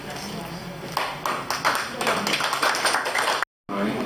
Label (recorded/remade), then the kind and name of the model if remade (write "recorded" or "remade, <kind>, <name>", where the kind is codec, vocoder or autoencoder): recorded